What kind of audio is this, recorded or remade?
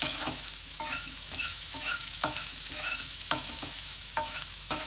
remade